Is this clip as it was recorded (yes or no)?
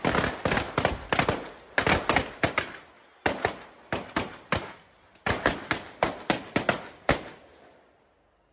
yes